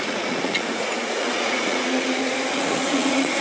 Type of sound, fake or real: fake